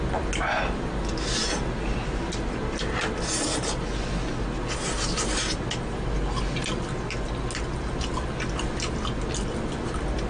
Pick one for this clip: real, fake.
real